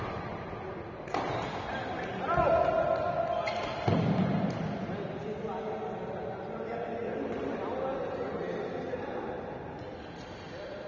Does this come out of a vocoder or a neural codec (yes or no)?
no